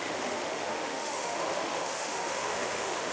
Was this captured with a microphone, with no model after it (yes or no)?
no